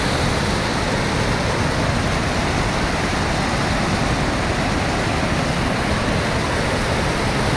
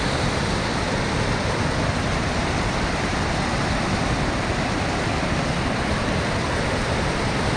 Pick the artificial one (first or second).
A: second